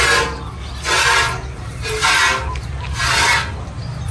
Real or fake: real